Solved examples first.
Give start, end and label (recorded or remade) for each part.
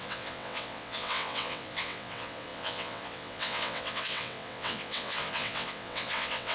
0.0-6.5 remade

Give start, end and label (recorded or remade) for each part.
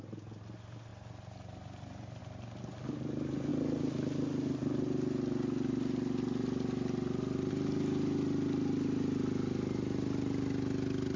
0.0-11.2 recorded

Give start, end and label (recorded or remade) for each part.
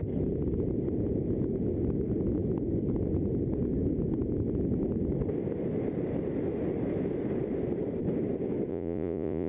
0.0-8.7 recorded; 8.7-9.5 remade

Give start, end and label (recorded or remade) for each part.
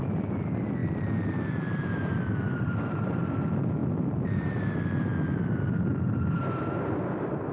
0.0-0.8 remade; 0.8-1.5 recorded; 1.5-7.5 remade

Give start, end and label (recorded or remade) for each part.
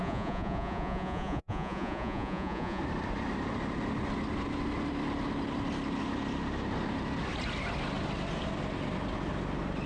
0.0-2.8 remade; 2.8-9.9 recorded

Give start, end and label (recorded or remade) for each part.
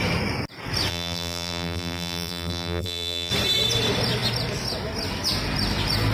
0.0-0.9 recorded; 0.9-3.3 remade; 3.3-6.1 recorded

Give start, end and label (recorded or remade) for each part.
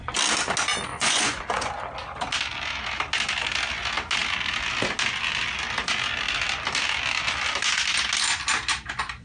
0.0-0.9 recorded; 0.9-1.7 remade; 1.7-9.2 recorded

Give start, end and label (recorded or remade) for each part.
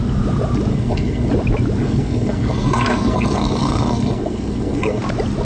0.0-0.7 recorded; 0.7-1.3 remade; 1.3-1.8 recorded; 1.8-5.0 remade; 5.0-5.4 recorded